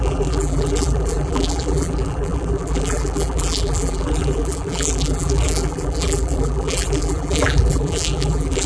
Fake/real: fake